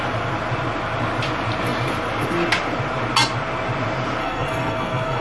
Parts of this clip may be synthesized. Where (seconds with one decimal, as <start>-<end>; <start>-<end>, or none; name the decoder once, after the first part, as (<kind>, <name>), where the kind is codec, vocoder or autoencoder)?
4.2-5.2 (codec, SNAC)